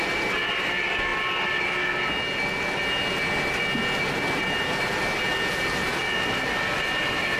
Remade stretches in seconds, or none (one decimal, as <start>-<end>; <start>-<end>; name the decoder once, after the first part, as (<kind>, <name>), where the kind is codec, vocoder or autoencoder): none